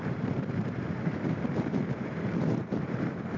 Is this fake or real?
fake